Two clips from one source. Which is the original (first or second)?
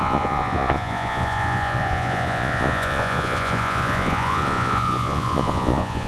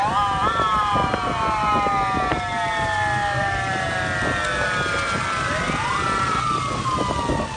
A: second